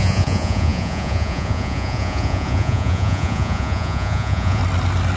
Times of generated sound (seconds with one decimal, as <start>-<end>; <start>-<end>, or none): 0.0-4.6